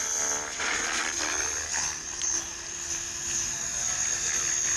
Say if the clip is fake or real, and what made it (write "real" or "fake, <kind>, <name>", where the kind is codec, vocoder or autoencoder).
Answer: real